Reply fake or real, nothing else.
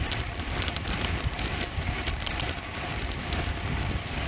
fake